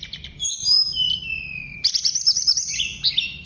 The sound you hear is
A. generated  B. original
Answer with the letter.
A